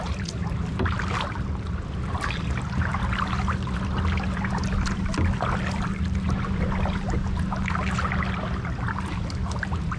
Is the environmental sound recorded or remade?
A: recorded